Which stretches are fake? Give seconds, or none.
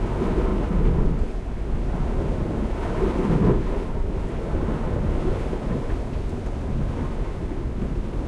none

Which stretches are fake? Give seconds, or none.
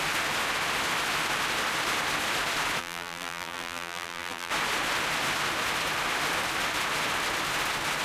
2.8-4.5 (vocoder, BigVGAN v2)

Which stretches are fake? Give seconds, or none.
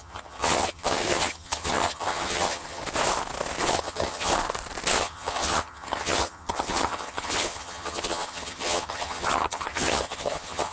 0.0-2.8 (vocoder, HiFi-GAN); 3.7-4.3; 5.0-10.7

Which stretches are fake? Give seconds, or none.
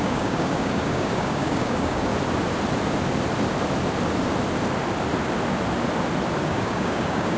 0.0-2.1 (codec, DAC); 6.4-7.4